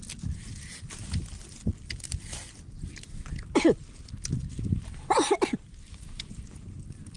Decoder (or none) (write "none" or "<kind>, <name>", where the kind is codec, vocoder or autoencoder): none